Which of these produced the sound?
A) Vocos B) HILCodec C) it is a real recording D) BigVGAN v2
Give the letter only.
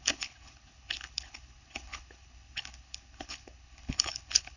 B